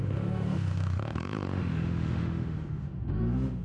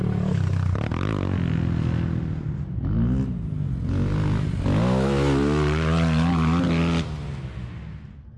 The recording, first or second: second